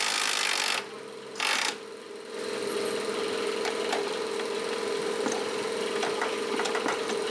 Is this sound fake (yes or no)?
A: no